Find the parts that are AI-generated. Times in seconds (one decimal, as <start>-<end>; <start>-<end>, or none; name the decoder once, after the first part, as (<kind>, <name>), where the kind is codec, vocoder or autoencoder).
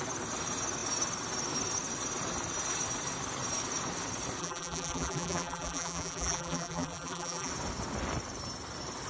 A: 4.4-7.5 (vocoder, BigVGAN v2)